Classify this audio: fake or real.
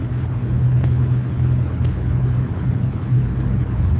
fake